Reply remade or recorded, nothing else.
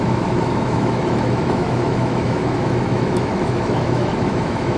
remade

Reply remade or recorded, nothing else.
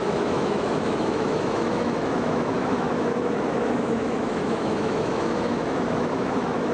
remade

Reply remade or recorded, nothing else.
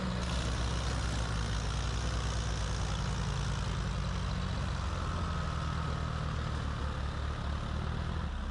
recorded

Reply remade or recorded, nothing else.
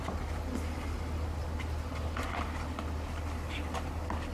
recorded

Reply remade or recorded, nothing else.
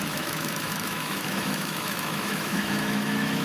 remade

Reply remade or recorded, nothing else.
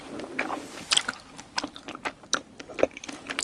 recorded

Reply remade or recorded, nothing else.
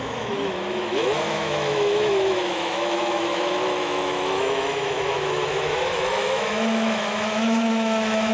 remade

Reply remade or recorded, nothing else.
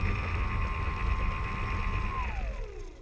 recorded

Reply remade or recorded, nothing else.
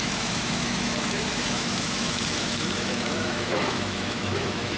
remade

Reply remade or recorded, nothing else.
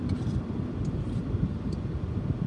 recorded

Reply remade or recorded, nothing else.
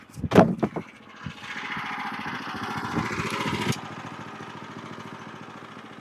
recorded